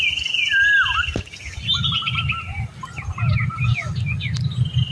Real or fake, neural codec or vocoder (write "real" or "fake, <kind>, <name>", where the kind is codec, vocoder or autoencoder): real